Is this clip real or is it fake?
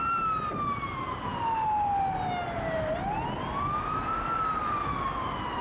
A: real